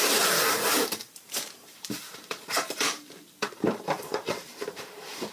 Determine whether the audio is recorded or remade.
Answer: remade